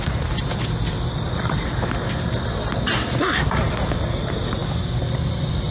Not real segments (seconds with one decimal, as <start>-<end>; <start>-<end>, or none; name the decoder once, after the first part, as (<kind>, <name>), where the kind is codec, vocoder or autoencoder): none